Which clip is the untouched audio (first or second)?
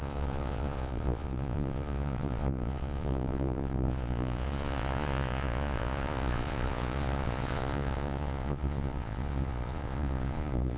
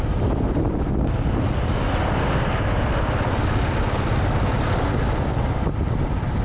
second